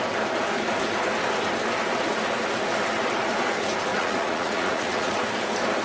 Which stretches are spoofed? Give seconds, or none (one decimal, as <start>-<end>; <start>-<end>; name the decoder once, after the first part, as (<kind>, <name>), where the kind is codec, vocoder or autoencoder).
3.9-5.2 (vocoder, Vocos)